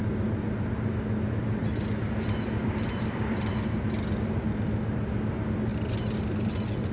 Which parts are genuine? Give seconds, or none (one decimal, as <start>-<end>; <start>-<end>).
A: 0.0-1.6; 3.8-6.9